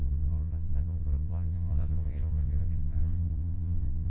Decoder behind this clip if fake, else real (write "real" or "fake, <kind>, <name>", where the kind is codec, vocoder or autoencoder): fake, vocoder, Vocos